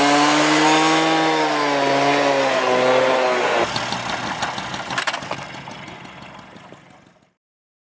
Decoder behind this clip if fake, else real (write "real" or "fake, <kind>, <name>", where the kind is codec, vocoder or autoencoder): real